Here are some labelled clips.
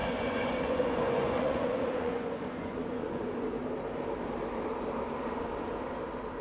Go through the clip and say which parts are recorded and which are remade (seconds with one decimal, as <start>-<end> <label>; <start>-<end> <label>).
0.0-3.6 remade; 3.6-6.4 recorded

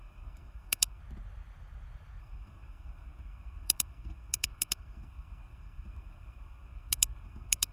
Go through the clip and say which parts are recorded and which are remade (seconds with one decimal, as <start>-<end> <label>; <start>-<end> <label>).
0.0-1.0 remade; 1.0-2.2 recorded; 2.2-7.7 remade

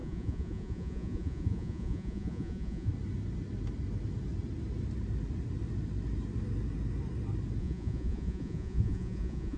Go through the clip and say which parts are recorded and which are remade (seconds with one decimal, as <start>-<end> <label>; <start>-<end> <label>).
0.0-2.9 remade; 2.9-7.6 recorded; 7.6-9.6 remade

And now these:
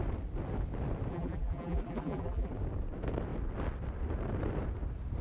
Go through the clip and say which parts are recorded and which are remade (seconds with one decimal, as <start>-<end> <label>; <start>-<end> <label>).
0.0-1.1 recorded; 1.1-2.5 remade; 2.5-5.2 recorded

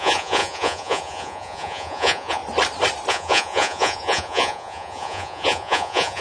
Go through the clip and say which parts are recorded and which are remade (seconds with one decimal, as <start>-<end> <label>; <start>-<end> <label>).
0.0-2.4 remade; 2.4-3.1 recorded; 3.1-6.2 remade

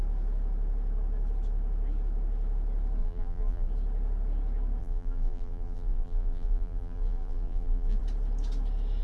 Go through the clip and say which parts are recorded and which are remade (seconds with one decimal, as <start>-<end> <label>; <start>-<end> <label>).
0.0-3.0 recorded; 3.0-3.7 remade; 3.7-4.8 recorded; 4.8-8.0 remade; 8.0-9.0 recorded

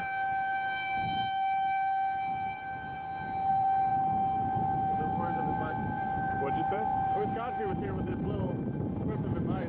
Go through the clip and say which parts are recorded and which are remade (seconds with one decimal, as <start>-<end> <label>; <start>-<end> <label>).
0.0-9.7 remade

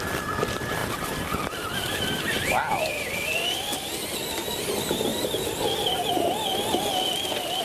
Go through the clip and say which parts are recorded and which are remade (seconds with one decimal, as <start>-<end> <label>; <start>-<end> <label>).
0.0-5.1 remade; 5.1-7.6 recorded